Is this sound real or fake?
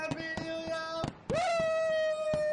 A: real